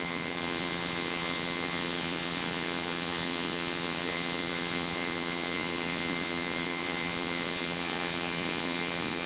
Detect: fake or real fake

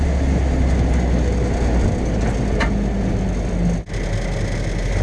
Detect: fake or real real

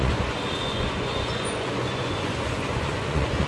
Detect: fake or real fake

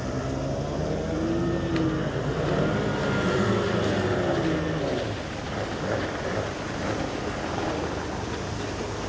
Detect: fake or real real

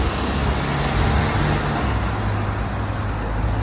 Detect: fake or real real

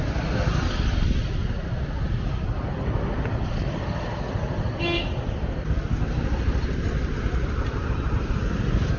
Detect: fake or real real